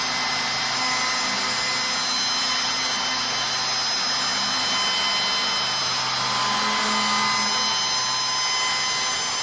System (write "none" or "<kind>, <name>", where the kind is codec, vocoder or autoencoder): none